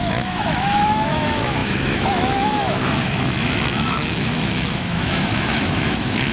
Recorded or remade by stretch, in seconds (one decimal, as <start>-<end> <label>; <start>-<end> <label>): 0.0-6.3 remade